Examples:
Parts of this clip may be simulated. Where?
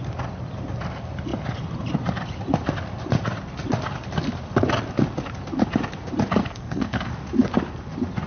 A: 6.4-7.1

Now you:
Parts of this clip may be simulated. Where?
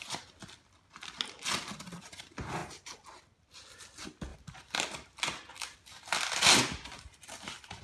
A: none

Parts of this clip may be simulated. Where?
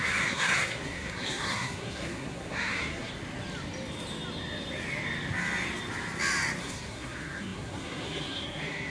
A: 0.0-3.1; 6.6-8.9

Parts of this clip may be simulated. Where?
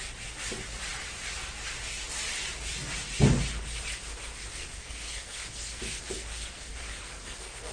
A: 4.5-7.7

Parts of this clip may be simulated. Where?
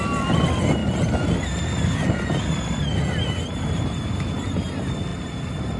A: none